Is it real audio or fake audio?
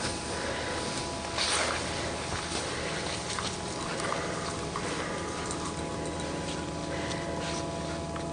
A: real